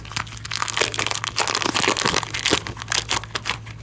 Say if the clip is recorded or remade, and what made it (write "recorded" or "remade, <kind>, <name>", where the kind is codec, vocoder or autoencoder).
recorded